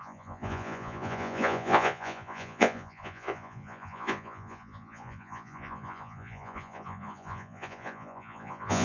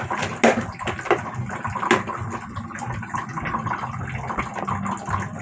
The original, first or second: second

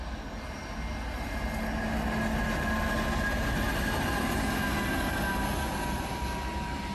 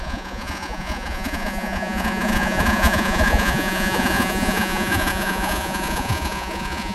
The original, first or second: first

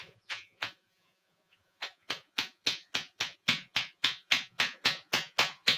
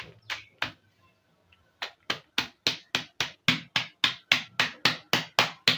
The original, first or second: second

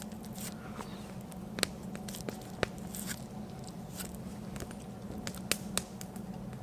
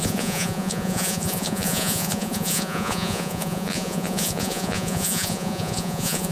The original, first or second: first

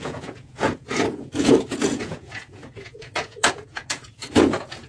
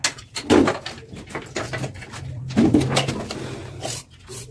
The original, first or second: second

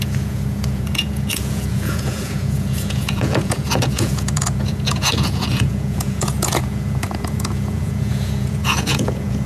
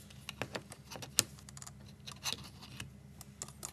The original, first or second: second